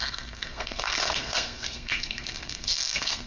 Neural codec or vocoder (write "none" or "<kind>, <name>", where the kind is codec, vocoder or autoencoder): codec, SNAC